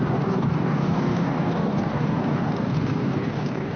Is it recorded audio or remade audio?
remade